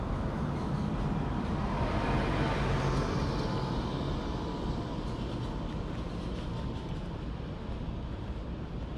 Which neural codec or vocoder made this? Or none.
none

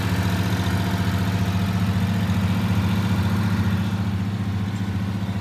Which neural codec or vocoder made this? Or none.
none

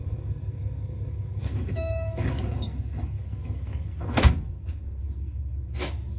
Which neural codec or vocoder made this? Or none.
codec, SNAC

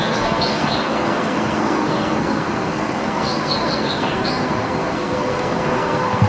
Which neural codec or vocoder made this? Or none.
codec, SNAC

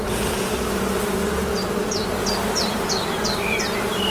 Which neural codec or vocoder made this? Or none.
none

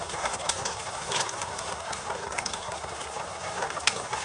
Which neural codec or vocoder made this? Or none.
codec, SNAC